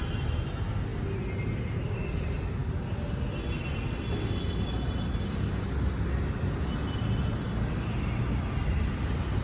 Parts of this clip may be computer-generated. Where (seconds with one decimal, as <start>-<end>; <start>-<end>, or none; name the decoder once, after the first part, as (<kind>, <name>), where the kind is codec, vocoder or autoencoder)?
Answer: none